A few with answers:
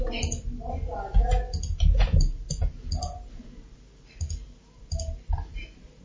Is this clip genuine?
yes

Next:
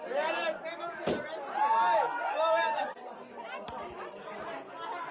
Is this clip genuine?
yes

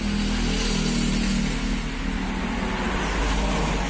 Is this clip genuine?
yes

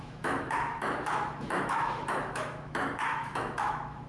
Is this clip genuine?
no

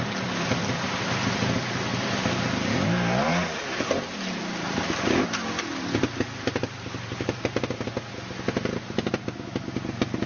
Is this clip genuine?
yes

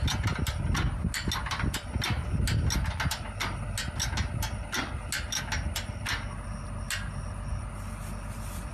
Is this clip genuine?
yes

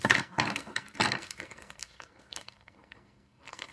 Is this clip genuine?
no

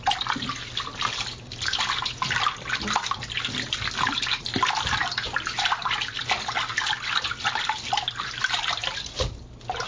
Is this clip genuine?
yes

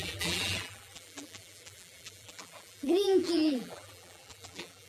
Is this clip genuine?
no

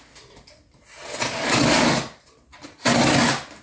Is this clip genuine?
yes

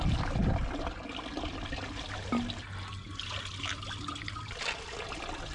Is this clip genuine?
yes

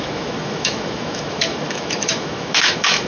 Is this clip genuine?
no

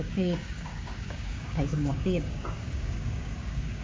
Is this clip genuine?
no